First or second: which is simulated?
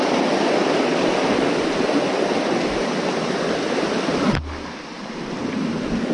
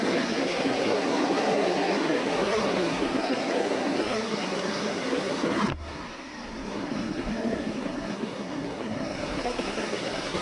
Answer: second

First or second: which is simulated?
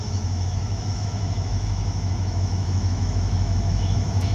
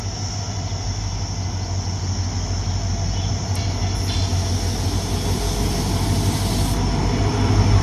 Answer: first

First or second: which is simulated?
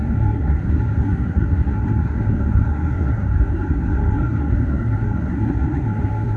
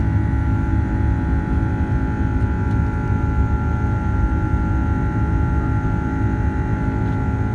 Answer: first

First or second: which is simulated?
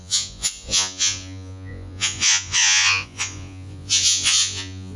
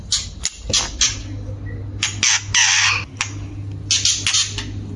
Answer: first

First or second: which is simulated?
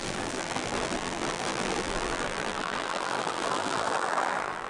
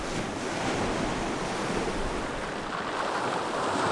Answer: first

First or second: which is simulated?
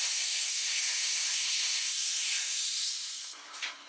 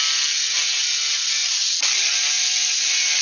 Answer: first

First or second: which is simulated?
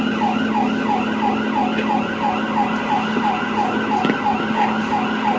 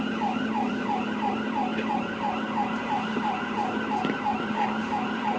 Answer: second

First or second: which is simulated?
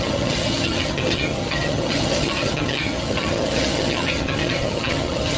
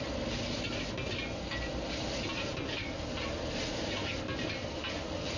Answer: first